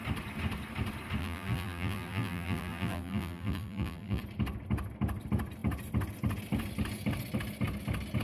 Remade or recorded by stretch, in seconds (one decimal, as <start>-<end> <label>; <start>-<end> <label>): 0.0-1.2 recorded; 1.2-4.2 remade; 4.2-8.2 recorded